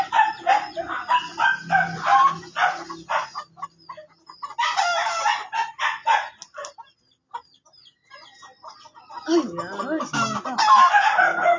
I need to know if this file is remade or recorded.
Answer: recorded